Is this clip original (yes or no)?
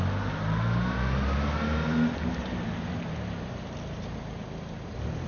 yes